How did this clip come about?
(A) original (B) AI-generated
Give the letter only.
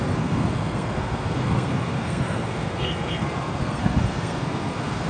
B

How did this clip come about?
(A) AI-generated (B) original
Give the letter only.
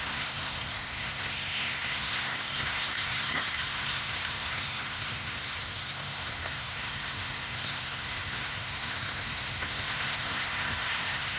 A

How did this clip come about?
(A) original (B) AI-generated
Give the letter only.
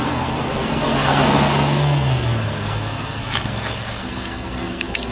B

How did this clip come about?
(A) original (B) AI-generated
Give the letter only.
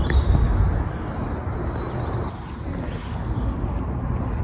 A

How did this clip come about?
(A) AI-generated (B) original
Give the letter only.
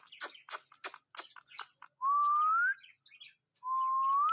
B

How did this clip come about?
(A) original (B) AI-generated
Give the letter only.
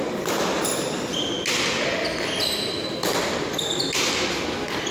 A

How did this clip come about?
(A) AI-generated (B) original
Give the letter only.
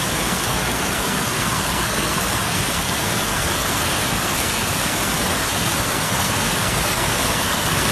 A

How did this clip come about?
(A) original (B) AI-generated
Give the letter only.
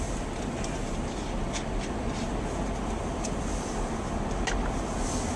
A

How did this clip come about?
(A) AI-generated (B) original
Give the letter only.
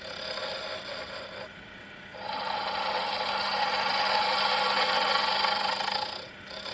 B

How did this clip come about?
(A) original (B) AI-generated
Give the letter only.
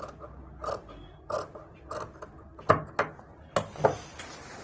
A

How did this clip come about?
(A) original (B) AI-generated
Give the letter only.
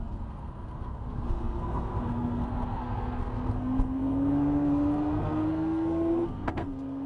B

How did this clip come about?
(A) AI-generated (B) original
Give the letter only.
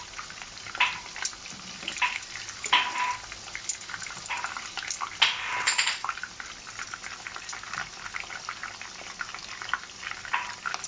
B